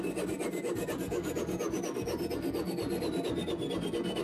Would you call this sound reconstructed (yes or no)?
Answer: no